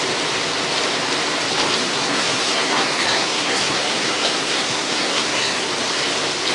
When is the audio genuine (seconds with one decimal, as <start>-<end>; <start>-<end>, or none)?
0.0-1.8; 5.7-6.5